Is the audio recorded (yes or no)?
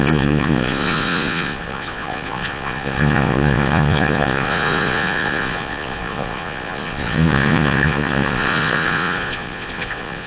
no